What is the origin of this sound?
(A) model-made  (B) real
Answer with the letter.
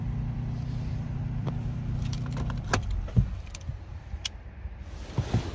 A